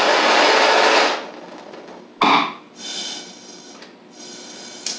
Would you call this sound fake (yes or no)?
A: no